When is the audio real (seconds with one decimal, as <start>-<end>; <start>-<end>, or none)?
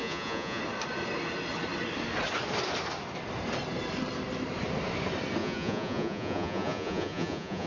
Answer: 0.6-5.4